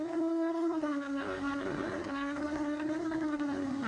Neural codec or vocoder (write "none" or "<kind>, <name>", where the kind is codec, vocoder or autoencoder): codec, SNAC